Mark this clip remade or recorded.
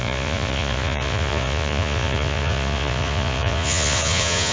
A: remade